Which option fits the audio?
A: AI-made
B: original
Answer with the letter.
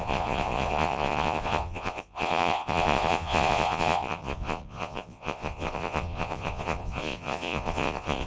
A